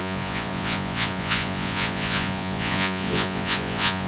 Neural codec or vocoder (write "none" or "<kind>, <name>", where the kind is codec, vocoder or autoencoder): vocoder, Vocos